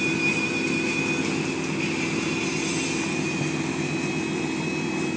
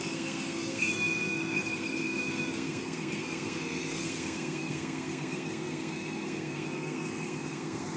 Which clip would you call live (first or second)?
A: first